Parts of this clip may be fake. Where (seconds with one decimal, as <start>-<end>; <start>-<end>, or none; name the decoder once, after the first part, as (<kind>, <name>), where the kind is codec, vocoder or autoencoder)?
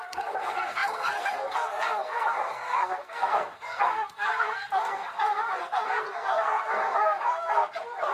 0.0-8.1 (codec, SNAC)